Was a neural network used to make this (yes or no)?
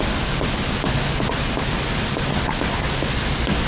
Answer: no